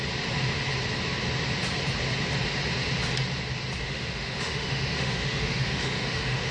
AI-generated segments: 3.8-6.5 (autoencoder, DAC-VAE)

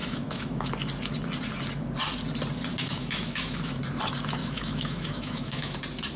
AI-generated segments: 0.0-0.7 (autoencoder, DAC-VAE); 2.8-3.8; 4.4-5.8

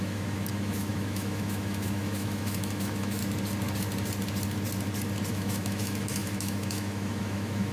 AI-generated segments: 0.0-3.2 (autoencoder, DAC-VAE); 5.3-7.7

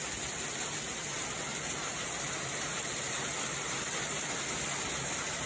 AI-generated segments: none